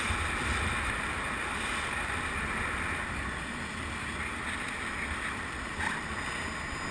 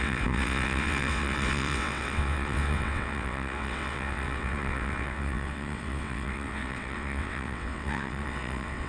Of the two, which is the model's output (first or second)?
second